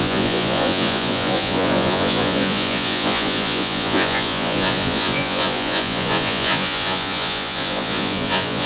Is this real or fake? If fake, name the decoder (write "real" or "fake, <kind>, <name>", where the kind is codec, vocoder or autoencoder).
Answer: fake, vocoder, Vocos